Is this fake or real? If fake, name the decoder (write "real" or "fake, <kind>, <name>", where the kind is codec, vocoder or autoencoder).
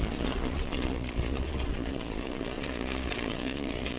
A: fake, vocoder, Vocos